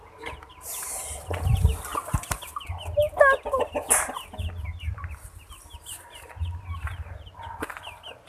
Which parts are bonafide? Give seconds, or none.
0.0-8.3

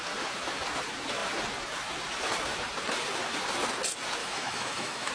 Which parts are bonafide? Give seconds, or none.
0.0-4.2

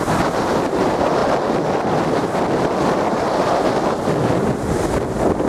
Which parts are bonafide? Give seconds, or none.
0.0-5.5

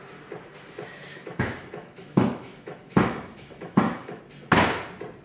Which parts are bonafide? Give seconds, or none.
0.0-1.1; 4.2-5.2

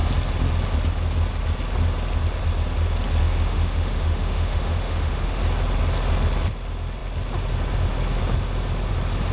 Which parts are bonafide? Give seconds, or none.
0.0-3.2; 5.4-9.3

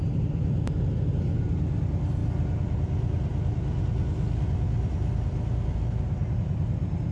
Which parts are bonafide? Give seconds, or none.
0.0-7.1